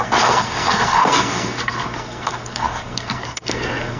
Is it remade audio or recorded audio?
remade